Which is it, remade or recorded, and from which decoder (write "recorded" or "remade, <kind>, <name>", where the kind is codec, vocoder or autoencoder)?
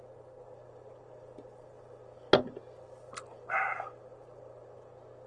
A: recorded